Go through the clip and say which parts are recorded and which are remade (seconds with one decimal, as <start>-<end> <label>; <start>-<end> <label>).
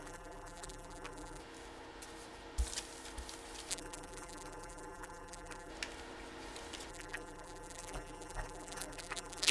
0.0-1.4 remade; 1.4-3.7 recorded; 3.7-5.7 remade; 5.7-6.9 recorded; 6.9-9.5 remade